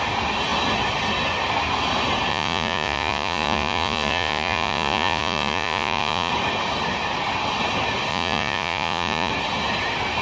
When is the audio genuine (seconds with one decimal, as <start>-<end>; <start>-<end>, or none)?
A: 0.0-2.3; 6.3-8.1; 9.3-10.2